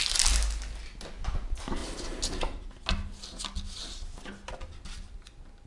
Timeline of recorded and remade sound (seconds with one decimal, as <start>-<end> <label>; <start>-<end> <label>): 0.0-5.7 recorded